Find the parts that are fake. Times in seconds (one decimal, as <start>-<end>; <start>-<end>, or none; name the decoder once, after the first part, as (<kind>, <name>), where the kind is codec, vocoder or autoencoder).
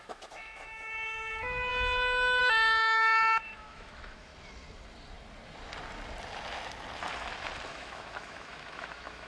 0.0-1.7 (autoencoder, DAC-VAE); 2.4-4.3; 7.7-9.3